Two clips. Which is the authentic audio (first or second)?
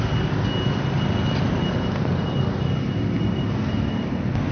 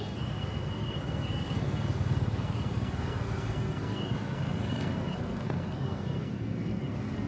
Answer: first